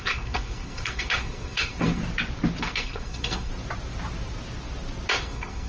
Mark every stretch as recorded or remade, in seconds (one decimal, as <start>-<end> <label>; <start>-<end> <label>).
0.0-2.0 remade; 2.0-2.6 recorded; 2.6-3.5 remade; 3.5-5.1 recorded; 5.1-5.7 remade